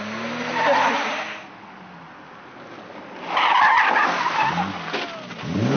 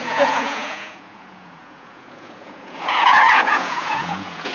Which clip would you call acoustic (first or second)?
first